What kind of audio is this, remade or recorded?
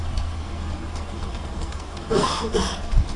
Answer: remade